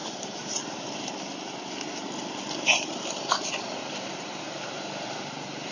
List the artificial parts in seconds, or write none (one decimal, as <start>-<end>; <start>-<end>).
0.0-1.1; 2.7-4.9